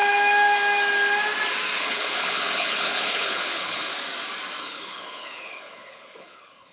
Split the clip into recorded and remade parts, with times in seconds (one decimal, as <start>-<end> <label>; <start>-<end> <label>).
0.0-1.8 recorded; 1.8-3.9 remade; 3.9-4.6 recorded; 4.6-6.7 remade